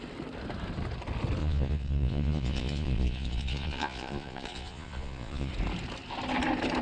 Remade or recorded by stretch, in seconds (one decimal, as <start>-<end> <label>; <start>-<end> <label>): 0.0-1.4 recorded; 1.4-5.5 remade; 5.5-6.8 recorded